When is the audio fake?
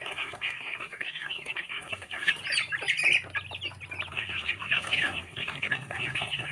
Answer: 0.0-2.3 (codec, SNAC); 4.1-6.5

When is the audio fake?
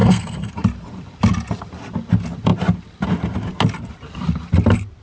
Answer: 0.0-0.5 (codec, SNAC)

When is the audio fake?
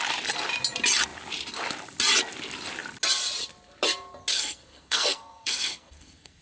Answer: 4.3-6.4 (codec, SNAC)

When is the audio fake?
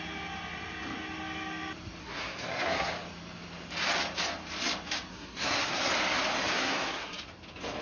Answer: 2.0-2.9 (codec, SNAC); 5.1-5.9; 6.5-7.2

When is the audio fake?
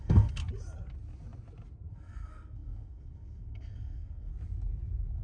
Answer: 0.0-0.4 (codec, SNAC); 1.9-4.3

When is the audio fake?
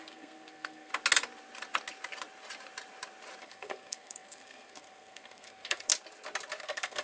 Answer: 0.0-0.9 (codec, SNAC); 3.4-5.9; 6.6-7.0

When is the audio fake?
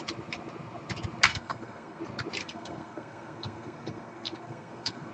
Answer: 1.3-2.0 (codec, SNAC); 2.4-5.1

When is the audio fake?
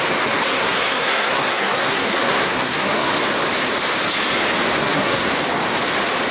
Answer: 0.5-3.1 (codec, SNAC); 4.8-5.3